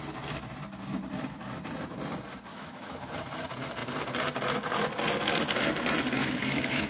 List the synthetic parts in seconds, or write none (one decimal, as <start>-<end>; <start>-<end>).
2.5-3.1; 6.2-6.9